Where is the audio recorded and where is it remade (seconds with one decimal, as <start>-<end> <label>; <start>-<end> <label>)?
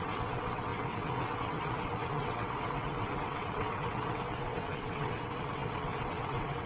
0.0-6.7 remade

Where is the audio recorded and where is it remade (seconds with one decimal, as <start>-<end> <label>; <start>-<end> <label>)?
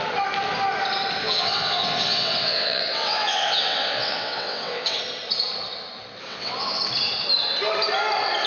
0.0-1.2 recorded; 1.2-5.0 remade; 5.0-6.3 recorded; 6.3-6.8 remade; 6.8-8.5 recorded